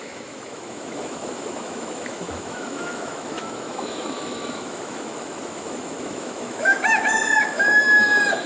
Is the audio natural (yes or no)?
no